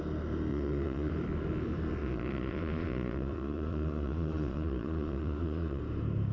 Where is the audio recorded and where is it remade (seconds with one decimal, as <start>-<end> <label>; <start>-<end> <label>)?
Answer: 0.0-0.5 recorded; 0.5-1.1 remade; 1.1-2.0 recorded; 2.0-5.8 remade; 5.8-6.3 recorded